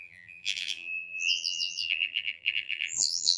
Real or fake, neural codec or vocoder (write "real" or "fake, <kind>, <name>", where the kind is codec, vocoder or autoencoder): fake, vocoder, BigVGAN v2